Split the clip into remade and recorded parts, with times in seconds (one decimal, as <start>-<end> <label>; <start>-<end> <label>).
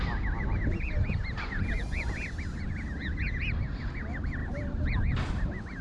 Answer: 0.0-5.8 recorded